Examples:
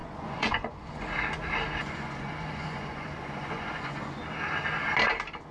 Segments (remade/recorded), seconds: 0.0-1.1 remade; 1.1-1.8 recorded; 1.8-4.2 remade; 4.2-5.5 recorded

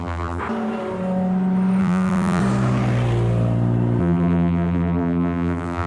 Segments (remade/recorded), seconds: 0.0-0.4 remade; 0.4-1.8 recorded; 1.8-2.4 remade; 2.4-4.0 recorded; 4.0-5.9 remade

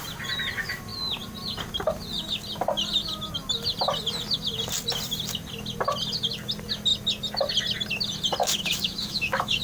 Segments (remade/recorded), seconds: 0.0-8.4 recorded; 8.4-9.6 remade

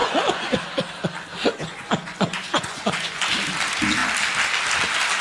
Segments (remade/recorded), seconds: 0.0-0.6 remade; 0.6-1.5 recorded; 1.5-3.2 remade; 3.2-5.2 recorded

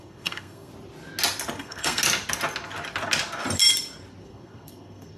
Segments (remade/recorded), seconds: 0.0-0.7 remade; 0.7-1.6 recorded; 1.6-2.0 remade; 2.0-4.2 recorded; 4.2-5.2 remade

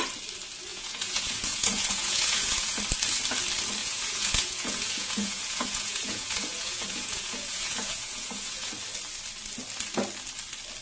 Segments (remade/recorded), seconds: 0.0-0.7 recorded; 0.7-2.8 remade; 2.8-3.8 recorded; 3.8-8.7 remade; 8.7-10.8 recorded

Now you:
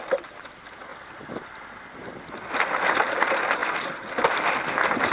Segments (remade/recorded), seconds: 0.0-5.1 recorded